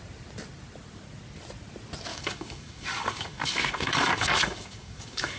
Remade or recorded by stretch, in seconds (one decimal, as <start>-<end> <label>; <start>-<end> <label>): 0.0-2.1 recorded; 2.1-5.4 remade